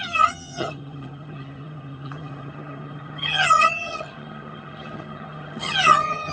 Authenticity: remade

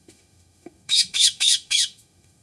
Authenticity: remade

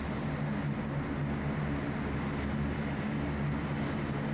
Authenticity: recorded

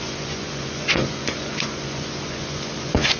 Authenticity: remade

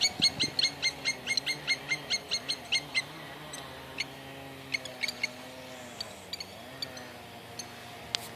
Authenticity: recorded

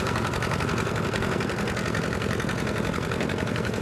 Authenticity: remade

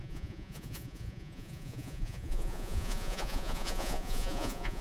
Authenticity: remade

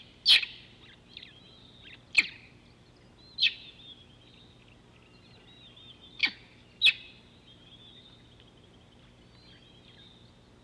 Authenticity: recorded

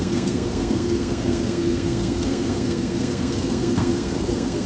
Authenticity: remade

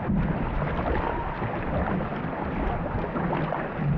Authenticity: recorded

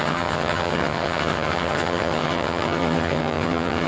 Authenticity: remade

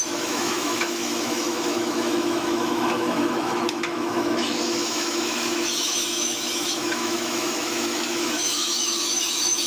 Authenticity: remade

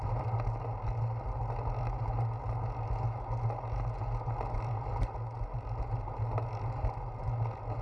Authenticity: recorded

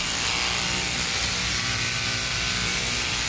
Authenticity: recorded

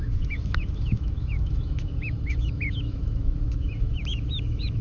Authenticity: remade